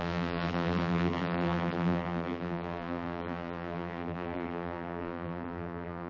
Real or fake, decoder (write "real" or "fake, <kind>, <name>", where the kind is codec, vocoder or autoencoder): fake, vocoder, BigVGAN v2